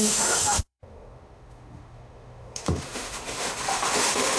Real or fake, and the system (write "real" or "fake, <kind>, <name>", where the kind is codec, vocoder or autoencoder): fake, autoencoder, DAC-VAE